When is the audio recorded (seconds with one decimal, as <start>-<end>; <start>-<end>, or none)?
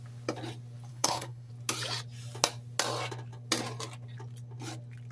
0.0-0.9; 1.5-5.1